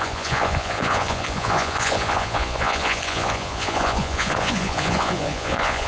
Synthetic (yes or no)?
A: yes